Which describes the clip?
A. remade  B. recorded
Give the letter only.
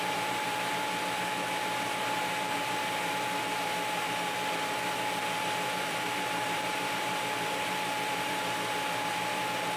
A